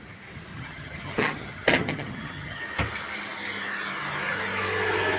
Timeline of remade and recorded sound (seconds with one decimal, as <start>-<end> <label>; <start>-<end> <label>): 0.0-0.5 recorded; 0.5-2.6 remade; 2.6-5.2 recorded